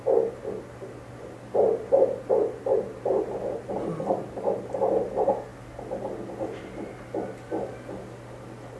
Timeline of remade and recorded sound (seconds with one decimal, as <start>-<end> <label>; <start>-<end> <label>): 0.0-8.8 recorded